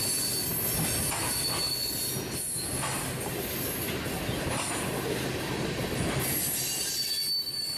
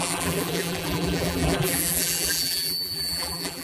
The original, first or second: first